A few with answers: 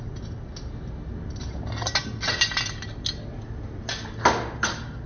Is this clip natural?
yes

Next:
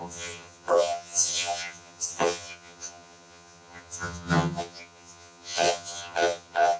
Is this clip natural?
no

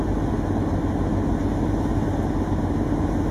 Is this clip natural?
yes